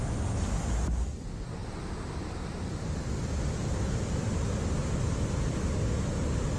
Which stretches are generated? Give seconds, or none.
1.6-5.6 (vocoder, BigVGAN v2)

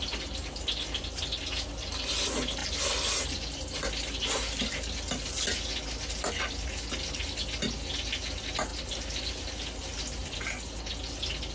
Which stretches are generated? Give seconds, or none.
none

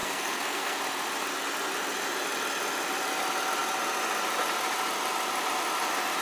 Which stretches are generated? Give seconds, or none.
0.0-0.8 (codec, SNAC)

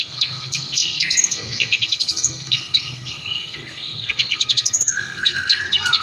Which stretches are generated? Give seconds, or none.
0.0-6.0 (codec, SNAC)